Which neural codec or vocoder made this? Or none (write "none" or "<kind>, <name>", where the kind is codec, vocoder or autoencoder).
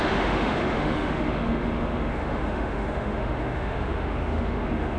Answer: autoencoder, DAC-VAE